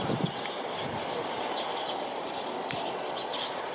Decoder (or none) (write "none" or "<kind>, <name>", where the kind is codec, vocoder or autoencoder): none